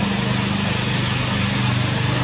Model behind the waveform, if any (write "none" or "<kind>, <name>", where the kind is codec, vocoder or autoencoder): none